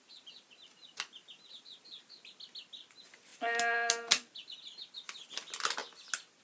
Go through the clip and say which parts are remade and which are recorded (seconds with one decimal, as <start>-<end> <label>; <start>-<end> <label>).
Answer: 0.0-6.4 recorded